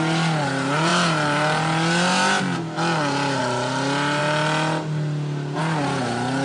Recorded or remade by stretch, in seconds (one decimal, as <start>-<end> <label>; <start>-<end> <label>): 0.0-6.4 recorded